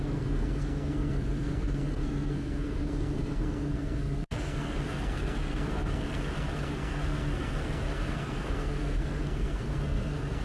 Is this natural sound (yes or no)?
no